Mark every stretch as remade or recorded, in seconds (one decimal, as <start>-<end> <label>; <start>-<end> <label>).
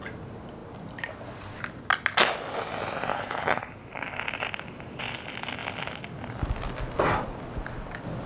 0.0-3.1 recorded; 3.1-3.7 remade; 3.7-8.3 recorded